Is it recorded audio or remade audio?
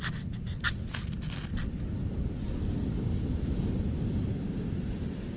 recorded